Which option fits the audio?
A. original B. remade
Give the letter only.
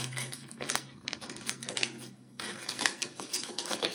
B